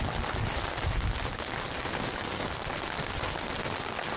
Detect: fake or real real